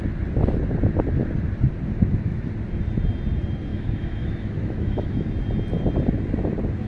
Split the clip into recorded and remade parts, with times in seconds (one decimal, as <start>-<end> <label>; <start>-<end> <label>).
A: 0.0-1.9 recorded; 1.9-2.5 remade; 2.5-3.7 recorded; 3.7-5.3 remade; 5.3-6.9 recorded